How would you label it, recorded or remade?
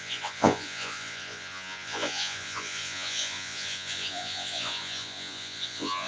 remade